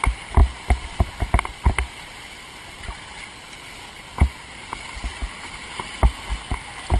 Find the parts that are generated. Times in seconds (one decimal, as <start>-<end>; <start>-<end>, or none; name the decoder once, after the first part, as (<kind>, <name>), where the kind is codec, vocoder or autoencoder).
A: none